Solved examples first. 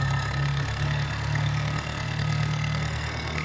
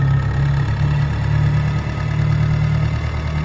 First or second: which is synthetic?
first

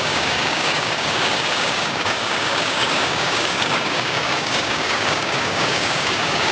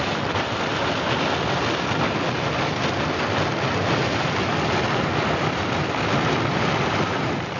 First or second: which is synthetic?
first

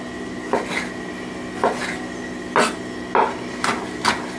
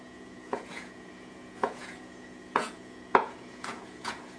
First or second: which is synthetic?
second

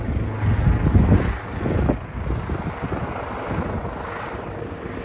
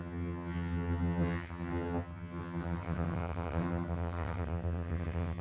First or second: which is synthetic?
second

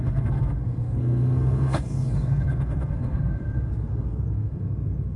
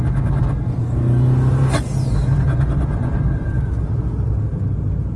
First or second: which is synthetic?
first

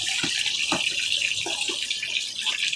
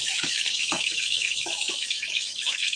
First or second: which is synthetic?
second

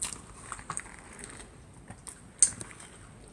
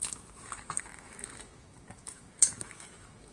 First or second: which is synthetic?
second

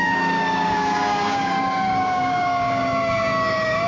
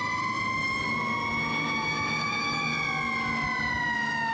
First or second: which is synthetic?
first